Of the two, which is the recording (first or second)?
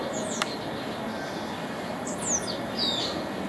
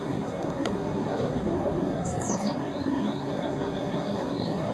first